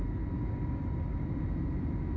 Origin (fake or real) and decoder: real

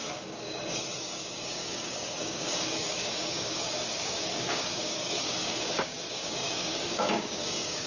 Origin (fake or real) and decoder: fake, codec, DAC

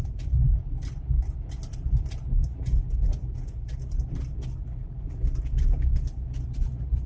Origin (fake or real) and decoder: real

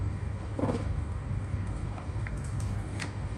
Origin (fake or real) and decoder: fake, codec, DAC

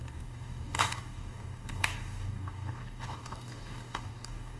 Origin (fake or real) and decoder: fake, codec, DAC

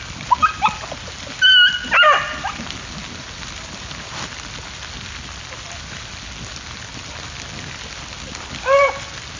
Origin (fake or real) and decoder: real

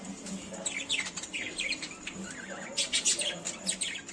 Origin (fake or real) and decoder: real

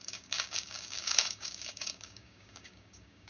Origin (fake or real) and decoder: fake, codec, DAC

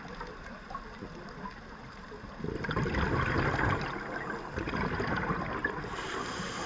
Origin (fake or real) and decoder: real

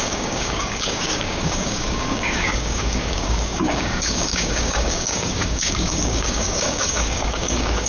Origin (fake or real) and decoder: fake, codec, DAC